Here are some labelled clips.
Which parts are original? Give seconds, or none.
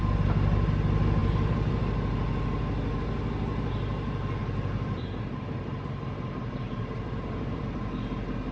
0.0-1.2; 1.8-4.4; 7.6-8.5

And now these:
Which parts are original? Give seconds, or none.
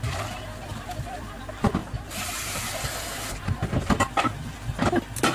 0.0-1.8; 2.7-5.3